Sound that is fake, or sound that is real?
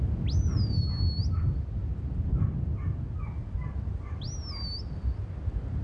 real